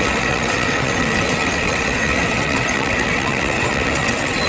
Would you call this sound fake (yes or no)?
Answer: yes